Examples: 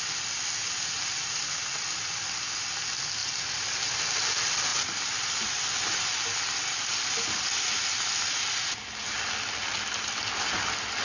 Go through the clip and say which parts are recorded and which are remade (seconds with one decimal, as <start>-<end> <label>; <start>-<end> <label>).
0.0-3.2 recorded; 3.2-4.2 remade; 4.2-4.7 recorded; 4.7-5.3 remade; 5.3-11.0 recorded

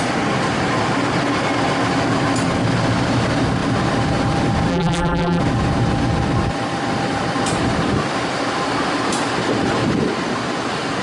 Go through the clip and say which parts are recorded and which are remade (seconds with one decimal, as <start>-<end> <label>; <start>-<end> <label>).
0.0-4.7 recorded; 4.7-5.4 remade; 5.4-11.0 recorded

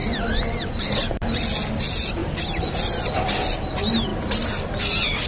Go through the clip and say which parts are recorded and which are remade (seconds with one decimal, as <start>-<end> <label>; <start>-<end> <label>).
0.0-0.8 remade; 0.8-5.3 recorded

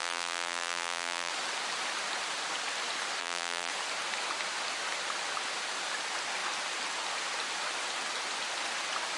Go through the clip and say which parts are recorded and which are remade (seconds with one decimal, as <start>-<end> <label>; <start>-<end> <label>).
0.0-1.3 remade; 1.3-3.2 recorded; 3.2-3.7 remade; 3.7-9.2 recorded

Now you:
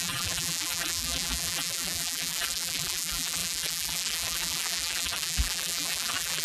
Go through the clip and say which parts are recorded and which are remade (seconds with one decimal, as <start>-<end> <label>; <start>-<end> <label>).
0.0-6.4 remade

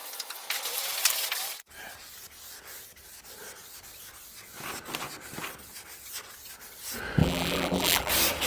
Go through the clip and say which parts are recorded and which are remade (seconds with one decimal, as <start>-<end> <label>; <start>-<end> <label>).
0.0-7.2 recorded; 7.2-8.1 remade; 8.1-8.5 recorded